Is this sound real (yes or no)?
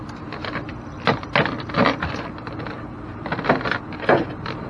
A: yes